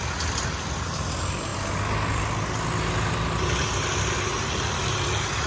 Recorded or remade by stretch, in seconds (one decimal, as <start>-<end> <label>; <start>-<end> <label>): 0.0-5.5 recorded